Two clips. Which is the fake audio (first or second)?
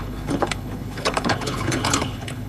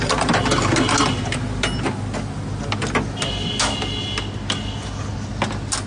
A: first